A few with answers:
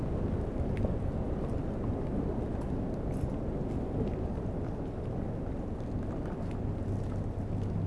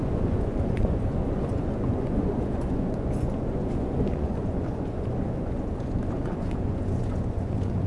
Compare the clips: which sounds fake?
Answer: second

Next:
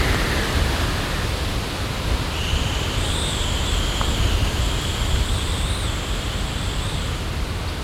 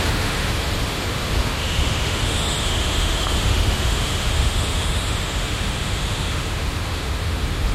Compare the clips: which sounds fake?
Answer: second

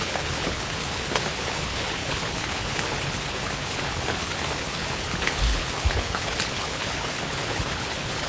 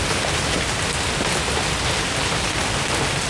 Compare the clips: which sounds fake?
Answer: first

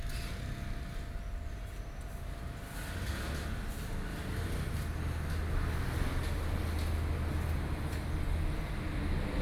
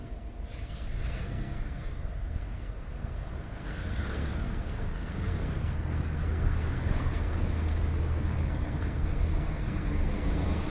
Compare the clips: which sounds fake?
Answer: second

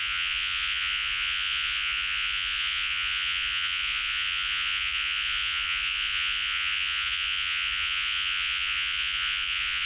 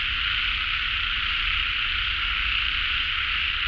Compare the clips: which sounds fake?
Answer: first